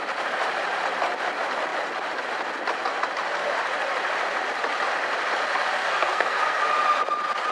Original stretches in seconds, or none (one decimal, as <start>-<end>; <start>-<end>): 0.0-5.8; 6.6-7.5